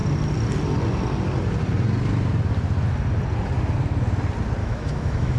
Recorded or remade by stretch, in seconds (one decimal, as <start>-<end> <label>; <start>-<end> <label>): 0.0-4.6 recorded; 4.6-5.4 remade